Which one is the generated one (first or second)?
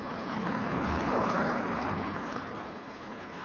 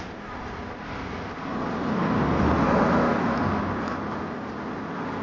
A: first